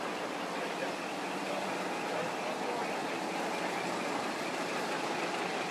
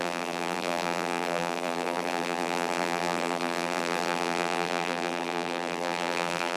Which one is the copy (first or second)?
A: second